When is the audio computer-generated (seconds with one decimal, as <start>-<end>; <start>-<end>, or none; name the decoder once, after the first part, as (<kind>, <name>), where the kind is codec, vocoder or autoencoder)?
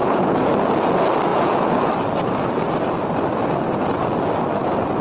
0.0-0.5 (vocoder, Vocos); 1.3-1.9